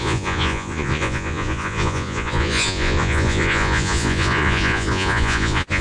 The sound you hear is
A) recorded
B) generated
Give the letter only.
B